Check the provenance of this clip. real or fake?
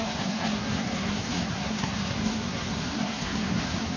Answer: fake